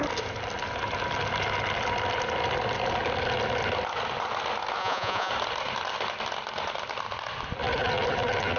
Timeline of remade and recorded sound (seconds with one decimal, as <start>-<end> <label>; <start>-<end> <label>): 0.0-4.8 recorded; 4.8-5.3 remade; 5.3-8.6 recorded

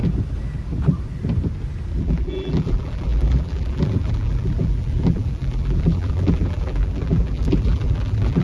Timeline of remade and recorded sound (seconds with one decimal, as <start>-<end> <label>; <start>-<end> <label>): 0.0-2.0 recorded; 2.0-8.4 remade

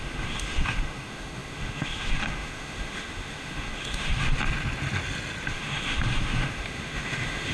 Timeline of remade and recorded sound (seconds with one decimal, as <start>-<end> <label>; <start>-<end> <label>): 0.0-4.3 remade; 4.3-5.5 recorded; 5.5-7.5 remade

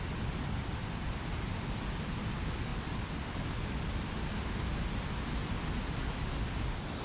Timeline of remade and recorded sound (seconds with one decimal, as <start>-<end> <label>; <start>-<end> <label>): 0.0-7.0 recorded

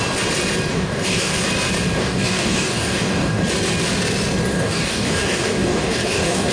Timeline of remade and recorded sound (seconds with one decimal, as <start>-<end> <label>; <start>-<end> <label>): 0.0-0.7 recorded; 0.7-1.4 remade; 1.4-2.0 recorded; 2.0-3.4 remade; 3.4-4.5 recorded; 4.5-6.5 remade